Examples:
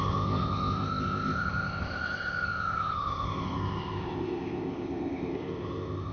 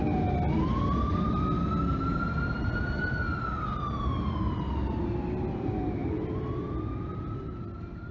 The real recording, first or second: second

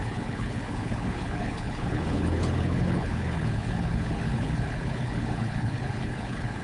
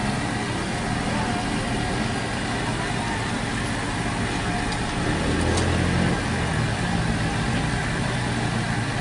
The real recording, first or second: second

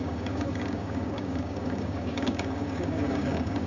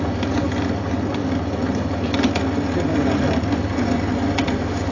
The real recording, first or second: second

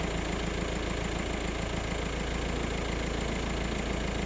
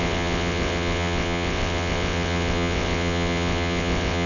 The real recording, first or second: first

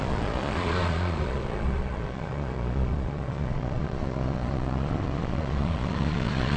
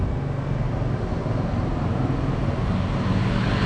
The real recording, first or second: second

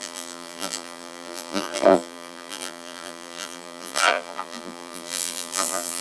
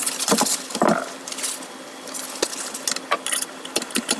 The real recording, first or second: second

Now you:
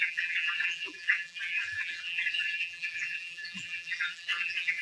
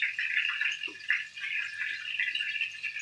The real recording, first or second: second